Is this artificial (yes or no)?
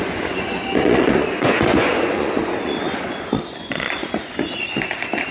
yes